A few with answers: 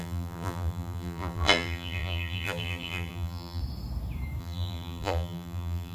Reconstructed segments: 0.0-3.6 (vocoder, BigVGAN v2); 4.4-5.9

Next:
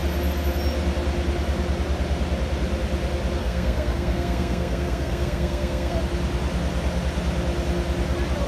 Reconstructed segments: 3.4-6.0 (codec, SNAC)